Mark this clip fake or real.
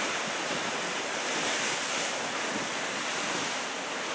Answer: real